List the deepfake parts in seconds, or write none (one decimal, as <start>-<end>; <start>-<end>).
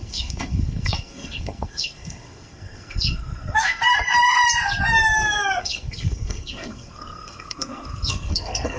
0.0-3.9; 5.6-8.8